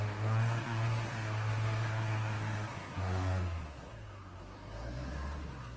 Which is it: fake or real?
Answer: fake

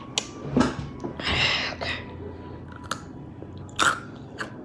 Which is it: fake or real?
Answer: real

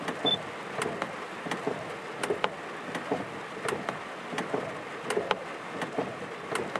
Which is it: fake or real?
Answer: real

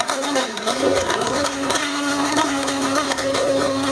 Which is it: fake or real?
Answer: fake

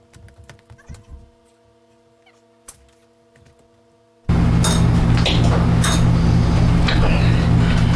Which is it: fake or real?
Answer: real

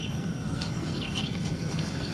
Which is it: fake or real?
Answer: fake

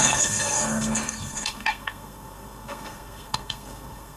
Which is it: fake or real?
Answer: fake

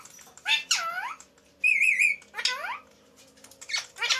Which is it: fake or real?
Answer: real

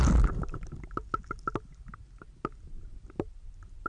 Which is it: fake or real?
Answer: real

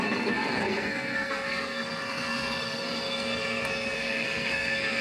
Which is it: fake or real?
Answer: fake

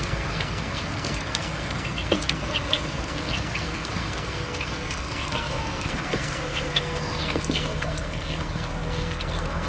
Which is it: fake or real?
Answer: fake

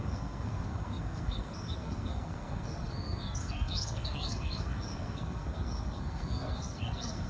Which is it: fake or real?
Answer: fake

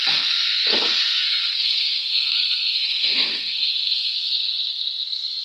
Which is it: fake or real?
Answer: fake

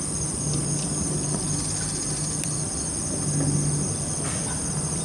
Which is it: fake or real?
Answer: real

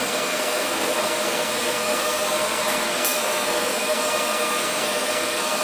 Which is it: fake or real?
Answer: fake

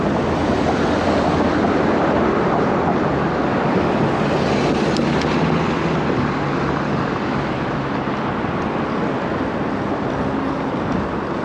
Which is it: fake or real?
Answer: real